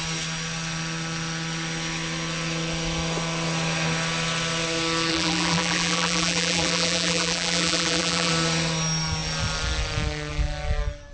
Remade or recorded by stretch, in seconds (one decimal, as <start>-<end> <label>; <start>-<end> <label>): 0.0-5.1 recorded; 5.1-8.3 remade; 8.3-11.1 recorded